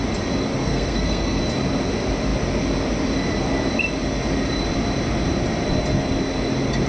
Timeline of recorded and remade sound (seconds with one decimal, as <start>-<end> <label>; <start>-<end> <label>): 0.0-0.5 recorded; 0.5-1.4 remade; 1.4-6.9 recorded